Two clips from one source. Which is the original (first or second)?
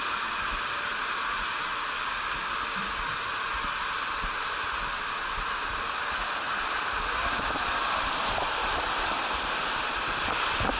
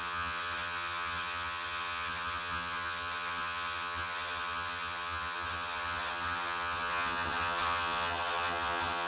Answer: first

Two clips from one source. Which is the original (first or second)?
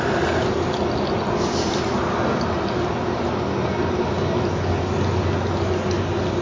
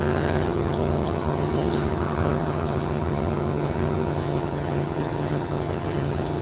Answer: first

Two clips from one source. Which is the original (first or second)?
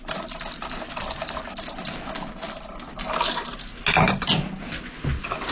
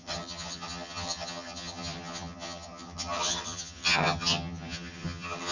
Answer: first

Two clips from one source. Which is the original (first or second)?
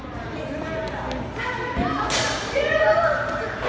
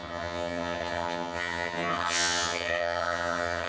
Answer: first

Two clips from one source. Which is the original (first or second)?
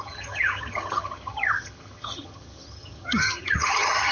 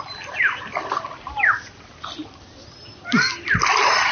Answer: second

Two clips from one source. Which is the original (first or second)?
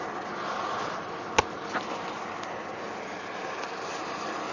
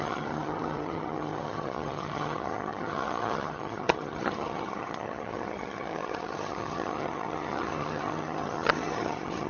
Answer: first